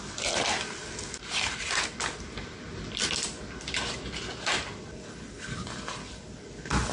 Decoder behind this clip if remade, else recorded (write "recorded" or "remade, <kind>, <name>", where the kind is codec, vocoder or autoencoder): recorded